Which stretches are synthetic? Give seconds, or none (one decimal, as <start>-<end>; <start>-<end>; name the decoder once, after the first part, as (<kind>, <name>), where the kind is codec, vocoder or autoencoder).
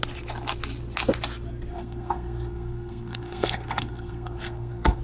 1.7-5.0 (codec, SNAC)